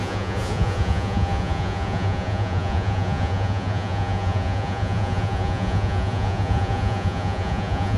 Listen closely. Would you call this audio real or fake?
fake